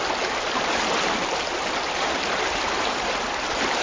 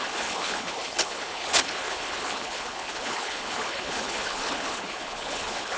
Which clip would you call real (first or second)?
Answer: first